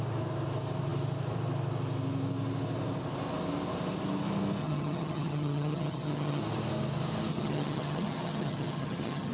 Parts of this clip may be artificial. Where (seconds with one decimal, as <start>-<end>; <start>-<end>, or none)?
4.6-6.4; 7.3-9.3